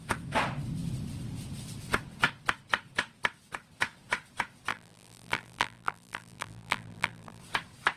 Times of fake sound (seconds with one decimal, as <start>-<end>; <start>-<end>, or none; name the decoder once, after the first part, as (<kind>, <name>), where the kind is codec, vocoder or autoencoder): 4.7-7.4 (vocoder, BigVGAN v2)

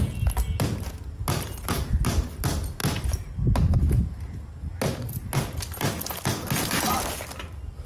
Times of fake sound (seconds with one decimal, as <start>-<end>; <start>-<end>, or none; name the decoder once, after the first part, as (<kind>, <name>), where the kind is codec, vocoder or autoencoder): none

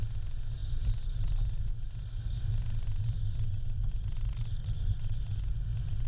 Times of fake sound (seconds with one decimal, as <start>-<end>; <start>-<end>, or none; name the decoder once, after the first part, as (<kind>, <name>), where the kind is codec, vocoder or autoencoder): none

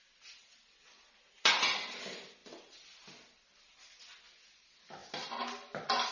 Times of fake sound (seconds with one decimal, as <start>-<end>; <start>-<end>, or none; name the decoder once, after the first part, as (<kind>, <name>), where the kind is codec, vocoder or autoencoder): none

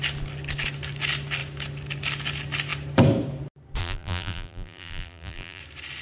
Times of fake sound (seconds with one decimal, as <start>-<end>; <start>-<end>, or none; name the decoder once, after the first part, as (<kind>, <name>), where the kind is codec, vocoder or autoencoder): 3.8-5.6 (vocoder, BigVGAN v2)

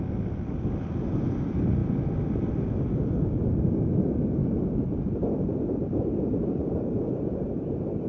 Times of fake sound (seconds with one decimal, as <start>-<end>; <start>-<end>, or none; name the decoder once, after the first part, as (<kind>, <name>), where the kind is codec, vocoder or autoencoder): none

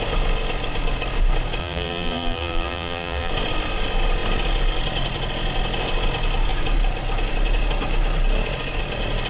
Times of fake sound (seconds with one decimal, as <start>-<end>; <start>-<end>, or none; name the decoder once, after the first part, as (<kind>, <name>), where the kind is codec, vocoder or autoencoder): 1.6-3.3 (vocoder, BigVGAN v2)

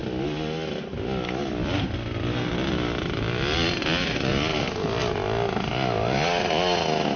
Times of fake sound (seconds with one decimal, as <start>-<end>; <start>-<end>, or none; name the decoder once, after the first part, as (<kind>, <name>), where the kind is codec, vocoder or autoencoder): none